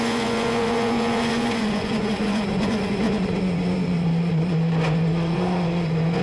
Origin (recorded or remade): remade